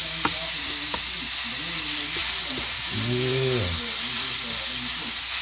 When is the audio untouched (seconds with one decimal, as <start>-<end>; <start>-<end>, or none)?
0.0-5.4